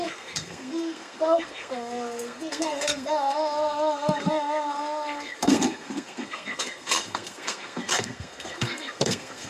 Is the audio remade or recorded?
remade